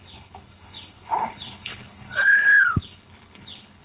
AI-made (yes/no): yes